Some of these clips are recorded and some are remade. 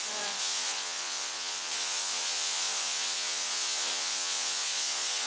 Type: remade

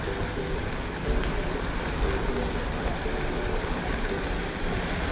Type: recorded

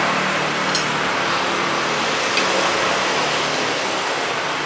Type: recorded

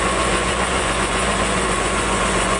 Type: remade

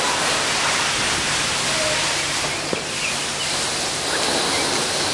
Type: recorded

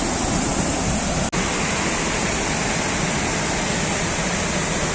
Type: recorded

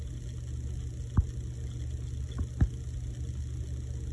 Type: recorded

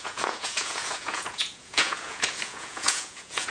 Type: remade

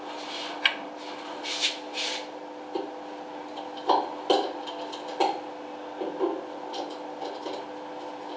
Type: recorded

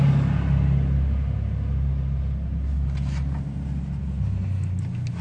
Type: recorded